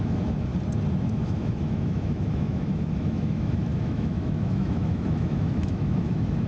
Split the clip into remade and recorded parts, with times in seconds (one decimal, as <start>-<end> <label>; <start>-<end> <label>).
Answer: 0.0-0.5 remade; 0.5-1.0 recorded; 1.0-6.5 remade